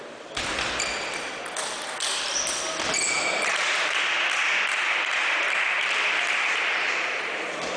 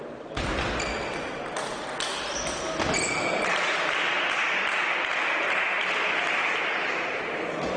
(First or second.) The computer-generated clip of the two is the first